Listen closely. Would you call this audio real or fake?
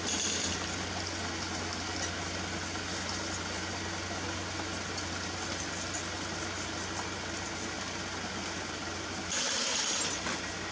real